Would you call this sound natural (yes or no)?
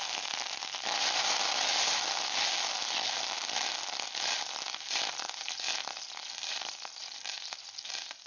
yes